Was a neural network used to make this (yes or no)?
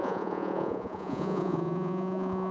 yes